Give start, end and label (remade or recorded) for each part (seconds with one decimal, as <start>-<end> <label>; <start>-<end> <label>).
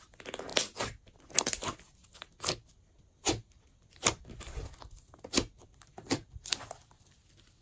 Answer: 0.0-7.6 recorded